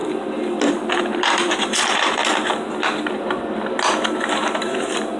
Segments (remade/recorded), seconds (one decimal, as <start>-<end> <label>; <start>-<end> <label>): 0.0-0.7 recorded; 0.7-2.2 remade; 2.2-5.2 recorded